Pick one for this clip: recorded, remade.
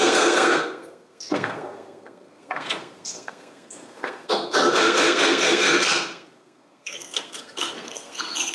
remade